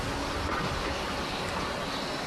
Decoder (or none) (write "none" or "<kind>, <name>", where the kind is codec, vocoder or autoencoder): none